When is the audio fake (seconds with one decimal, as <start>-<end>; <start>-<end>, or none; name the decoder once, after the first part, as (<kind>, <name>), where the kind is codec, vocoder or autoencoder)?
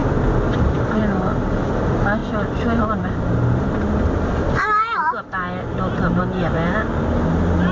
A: 0.0-1.0 (vocoder, BigVGAN v2)